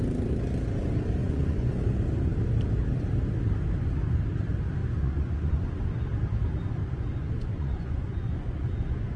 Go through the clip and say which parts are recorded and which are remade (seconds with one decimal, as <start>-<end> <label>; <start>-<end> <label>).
0.0-1.2 recorded; 1.2-1.8 remade; 1.8-4.8 recorded; 4.8-5.8 remade; 5.8-6.8 recorded; 6.8-9.2 remade